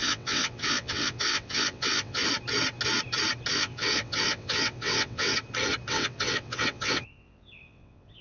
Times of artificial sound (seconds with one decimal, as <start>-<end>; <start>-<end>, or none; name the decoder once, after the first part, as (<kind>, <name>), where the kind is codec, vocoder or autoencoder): 0.0-2.2 (vocoder, WaveNeXt); 3.5-5.3; 5.9-8.2